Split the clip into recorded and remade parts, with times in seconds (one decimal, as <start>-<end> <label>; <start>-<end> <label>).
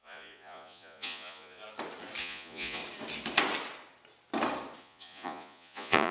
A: 0.0-1.6 remade; 1.6-2.2 recorded; 2.2-2.8 remade; 2.8-4.8 recorded; 4.8-6.1 remade